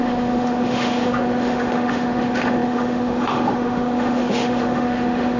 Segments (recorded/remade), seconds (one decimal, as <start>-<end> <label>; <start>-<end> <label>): 0.0-5.4 remade